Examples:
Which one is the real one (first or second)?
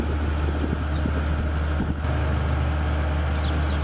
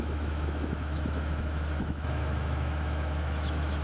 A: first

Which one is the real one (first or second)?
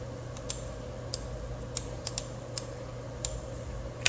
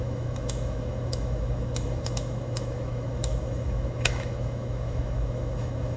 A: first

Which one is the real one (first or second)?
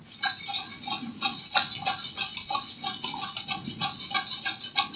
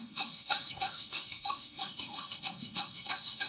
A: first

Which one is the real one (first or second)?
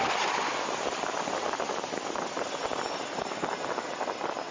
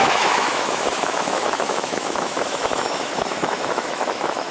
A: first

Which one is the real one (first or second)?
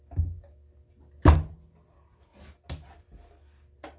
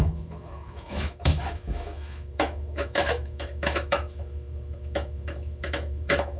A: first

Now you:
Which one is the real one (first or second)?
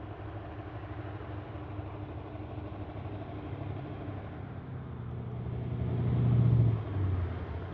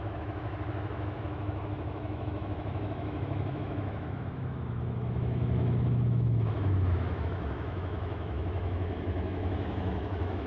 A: first